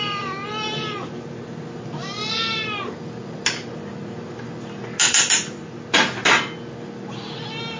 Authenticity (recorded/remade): recorded